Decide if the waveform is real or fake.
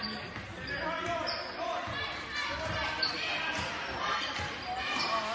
real